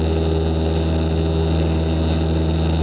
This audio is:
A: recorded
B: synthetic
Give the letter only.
A